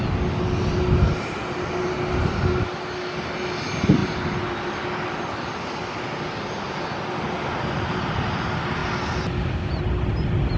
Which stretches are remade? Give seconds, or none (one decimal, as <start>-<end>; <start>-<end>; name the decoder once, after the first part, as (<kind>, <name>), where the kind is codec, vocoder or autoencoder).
none